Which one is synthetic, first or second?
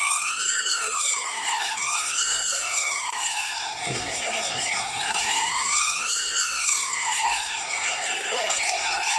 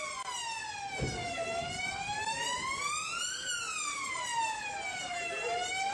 first